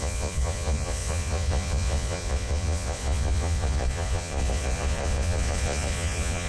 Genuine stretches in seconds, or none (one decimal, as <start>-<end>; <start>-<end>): none